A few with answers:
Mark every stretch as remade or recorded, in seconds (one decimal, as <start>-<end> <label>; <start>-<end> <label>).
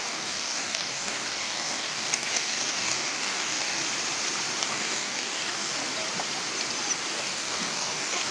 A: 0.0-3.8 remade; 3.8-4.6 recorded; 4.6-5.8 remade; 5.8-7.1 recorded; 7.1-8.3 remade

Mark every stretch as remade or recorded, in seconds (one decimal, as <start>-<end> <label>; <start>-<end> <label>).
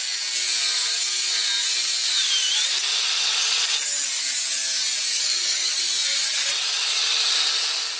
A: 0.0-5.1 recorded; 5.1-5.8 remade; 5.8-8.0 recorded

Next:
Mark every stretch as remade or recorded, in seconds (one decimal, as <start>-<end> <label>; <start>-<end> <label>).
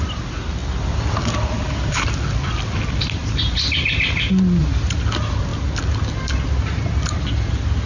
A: 0.0-7.9 recorded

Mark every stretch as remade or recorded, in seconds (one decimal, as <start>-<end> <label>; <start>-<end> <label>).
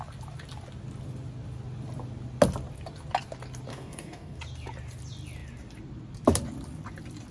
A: 0.0-3.7 recorded; 3.7-4.4 remade; 4.4-7.3 recorded